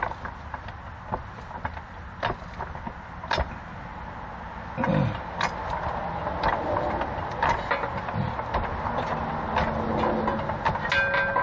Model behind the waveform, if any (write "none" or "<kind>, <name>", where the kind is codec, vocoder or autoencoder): none